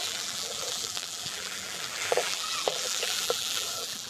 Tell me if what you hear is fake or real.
fake